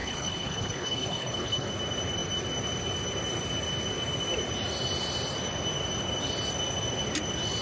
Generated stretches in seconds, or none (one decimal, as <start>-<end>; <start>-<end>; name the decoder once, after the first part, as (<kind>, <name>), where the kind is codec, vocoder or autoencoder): 0.0-1.7 (codec, HILCodec)